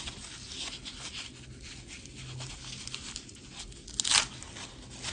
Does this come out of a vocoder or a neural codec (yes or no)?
no